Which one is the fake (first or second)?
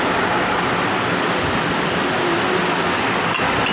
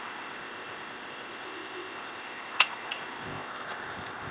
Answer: second